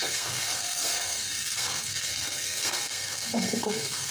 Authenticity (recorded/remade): remade